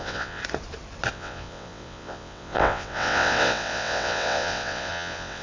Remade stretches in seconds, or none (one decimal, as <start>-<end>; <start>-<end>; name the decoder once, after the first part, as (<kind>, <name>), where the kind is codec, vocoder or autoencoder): 0.0-0.4 (vocoder, WaveNeXt); 1.1-5.4